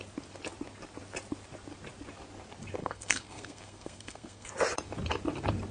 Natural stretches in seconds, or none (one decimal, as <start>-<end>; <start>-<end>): 0.0-2.8; 4.5-5.7